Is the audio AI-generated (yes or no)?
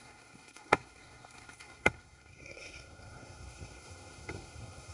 yes